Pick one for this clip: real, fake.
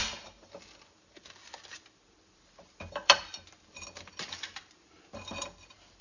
fake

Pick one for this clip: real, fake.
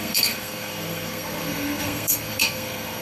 fake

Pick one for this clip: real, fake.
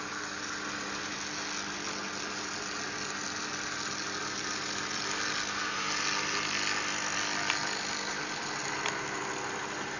real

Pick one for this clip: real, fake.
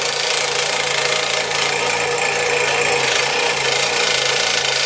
real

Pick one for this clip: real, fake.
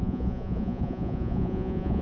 fake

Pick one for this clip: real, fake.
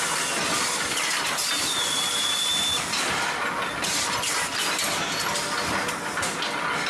real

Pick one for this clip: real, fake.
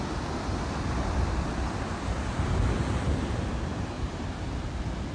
real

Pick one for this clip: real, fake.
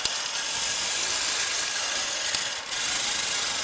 real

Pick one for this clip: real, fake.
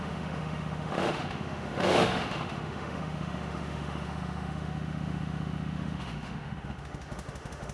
fake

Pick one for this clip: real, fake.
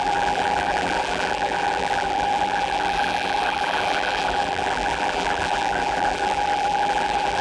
fake